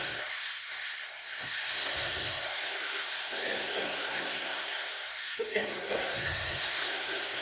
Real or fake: fake